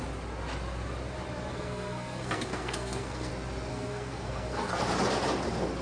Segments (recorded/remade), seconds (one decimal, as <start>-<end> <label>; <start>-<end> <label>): 0.0-1.5 recorded; 1.5-3.3 remade; 3.3-3.7 recorded; 3.7-4.7 remade; 4.7-5.8 recorded